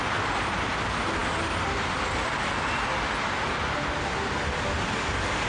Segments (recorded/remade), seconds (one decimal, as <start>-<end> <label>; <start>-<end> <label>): 0.0-5.5 recorded